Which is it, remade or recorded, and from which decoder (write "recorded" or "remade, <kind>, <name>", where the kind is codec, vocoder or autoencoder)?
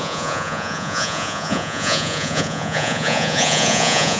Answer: remade, vocoder, Vocos